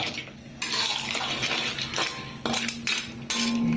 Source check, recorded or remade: recorded